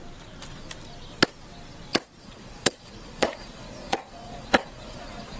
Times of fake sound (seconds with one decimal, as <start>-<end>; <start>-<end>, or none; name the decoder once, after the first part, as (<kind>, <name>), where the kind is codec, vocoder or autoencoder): 1.9-5.4 (vocoder, Vocos)